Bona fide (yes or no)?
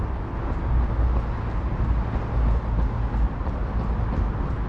yes